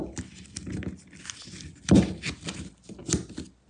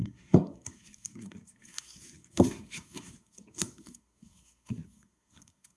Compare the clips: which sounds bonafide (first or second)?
first